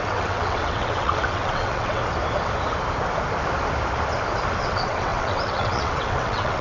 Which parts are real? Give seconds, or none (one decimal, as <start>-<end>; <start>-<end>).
2.0-4.6